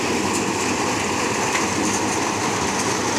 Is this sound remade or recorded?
recorded